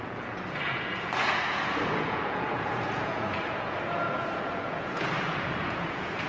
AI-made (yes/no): yes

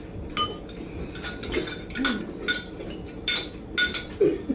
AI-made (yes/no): no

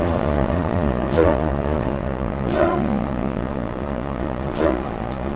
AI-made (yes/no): yes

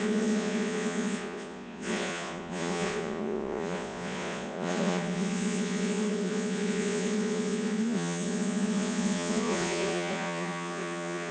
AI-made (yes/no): yes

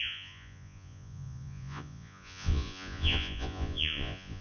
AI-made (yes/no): yes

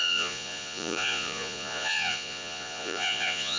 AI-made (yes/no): yes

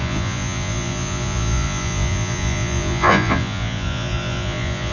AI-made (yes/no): yes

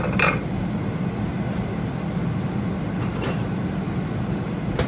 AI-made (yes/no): no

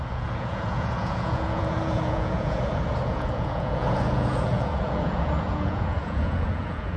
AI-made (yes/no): yes